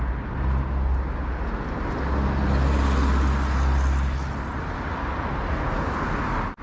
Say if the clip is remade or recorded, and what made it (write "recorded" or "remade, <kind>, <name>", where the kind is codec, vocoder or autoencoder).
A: recorded